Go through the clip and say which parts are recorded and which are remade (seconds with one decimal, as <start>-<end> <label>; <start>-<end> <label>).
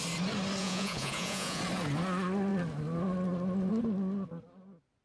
0.0-0.6 recorded; 0.6-1.6 remade; 1.6-5.0 recorded